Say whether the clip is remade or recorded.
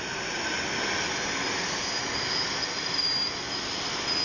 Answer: recorded